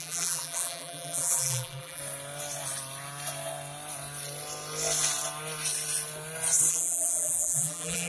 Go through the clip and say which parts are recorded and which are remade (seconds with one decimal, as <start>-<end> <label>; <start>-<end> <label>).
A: 0.0-2.0 remade; 2.0-6.7 recorded; 6.7-8.1 remade